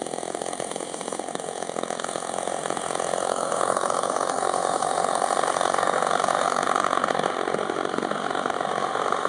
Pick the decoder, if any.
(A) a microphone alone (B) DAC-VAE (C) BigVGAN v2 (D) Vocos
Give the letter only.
B